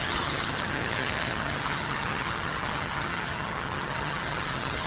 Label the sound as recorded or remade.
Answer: remade